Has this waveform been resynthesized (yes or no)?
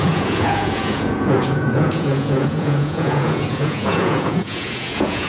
yes